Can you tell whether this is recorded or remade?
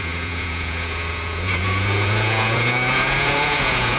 remade